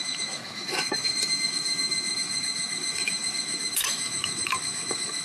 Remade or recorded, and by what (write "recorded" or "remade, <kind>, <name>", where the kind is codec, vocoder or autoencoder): remade, autoencoder, DAC-VAE